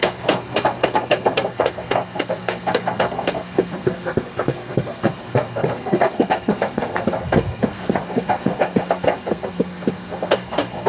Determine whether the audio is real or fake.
fake